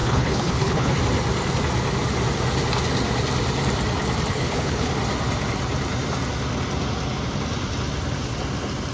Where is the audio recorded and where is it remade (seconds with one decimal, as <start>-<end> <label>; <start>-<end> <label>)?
0.0-1.0 remade; 1.0-4.3 recorded; 4.3-4.9 remade; 4.9-8.9 recorded